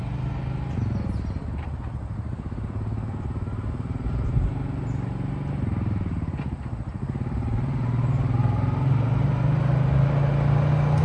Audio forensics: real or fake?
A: real